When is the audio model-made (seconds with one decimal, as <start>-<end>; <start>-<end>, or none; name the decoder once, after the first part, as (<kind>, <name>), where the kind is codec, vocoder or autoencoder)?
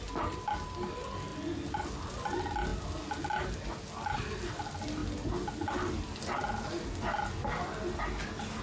none